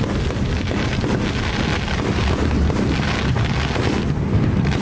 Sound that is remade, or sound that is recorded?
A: recorded